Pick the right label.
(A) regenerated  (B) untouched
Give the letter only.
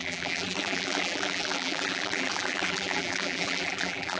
A